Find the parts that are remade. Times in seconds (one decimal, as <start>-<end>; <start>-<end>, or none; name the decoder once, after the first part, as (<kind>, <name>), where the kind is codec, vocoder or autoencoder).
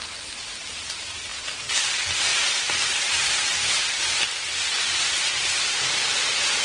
2.3-6.6 (vocoder, BigVGAN v2)